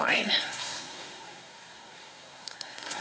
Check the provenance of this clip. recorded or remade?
remade